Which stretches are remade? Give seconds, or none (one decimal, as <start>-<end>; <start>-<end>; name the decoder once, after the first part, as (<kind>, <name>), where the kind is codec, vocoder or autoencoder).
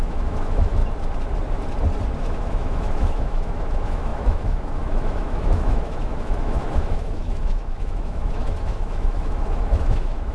0.0-0.8 (autoencoder, DAC-VAE); 2.2-10.3